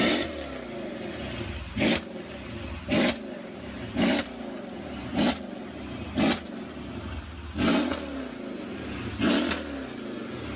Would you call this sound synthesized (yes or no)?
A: no